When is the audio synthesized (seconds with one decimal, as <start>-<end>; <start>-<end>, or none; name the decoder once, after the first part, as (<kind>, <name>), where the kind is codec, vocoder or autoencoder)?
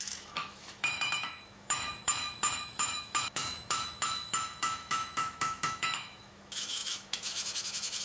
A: 0.0-8.0 (autoencoder, DAC-VAE)